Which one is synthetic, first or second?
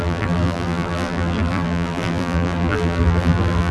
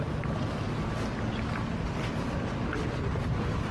first